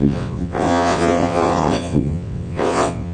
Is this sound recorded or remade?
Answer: remade